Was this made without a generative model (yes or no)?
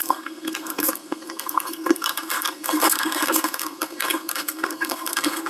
no